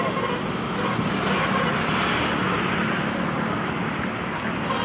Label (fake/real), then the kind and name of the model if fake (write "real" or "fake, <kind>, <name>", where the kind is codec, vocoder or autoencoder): real